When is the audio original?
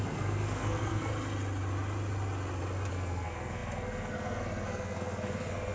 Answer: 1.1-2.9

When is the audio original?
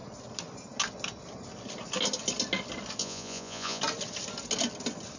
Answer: 0.0-3.0; 3.8-5.2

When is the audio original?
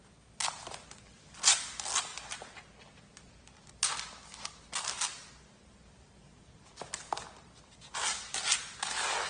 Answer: 0.0-9.3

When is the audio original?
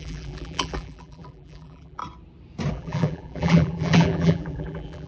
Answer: 2.0-2.7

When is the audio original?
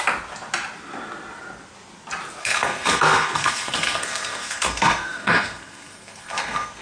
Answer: 0.0-2.4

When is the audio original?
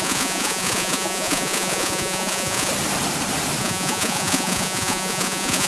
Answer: 2.7-3.6